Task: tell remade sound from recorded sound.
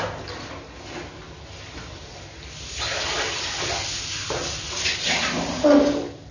recorded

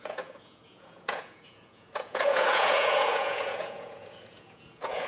remade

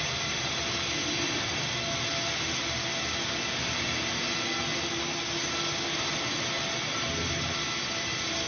recorded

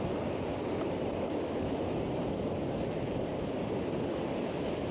recorded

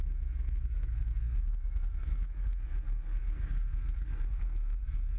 remade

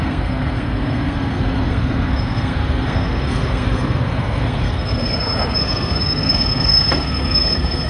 remade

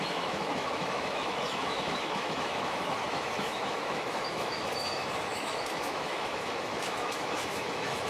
remade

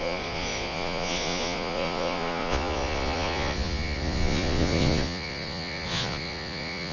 remade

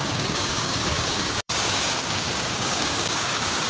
remade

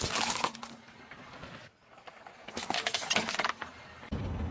recorded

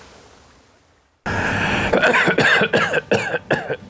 recorded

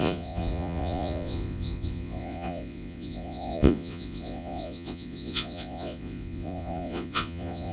remade